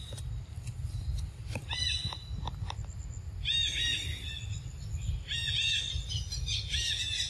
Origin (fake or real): real